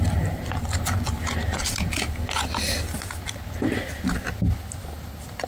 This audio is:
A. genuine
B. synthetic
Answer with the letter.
A